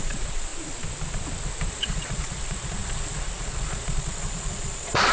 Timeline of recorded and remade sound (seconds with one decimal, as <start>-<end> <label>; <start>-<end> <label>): 0.0-0.5 remade; 0.5-1.7 recorded; 1.7-5.1 remade